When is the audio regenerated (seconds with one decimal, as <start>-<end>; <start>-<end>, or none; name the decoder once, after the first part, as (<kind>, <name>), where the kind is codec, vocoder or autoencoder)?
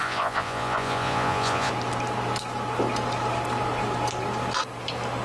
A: 0.0-1.7 (vocoder, Vocos)